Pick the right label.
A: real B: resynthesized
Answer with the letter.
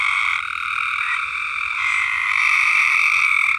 B